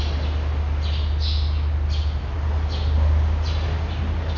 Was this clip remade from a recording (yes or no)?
no